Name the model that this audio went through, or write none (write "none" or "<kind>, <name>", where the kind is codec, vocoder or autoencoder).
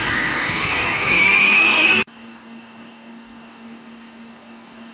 codec, DAC